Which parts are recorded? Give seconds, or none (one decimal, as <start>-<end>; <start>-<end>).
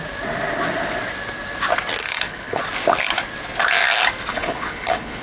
0.0-2.0; 2.6-4.3